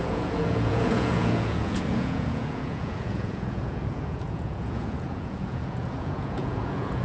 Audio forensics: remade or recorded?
remade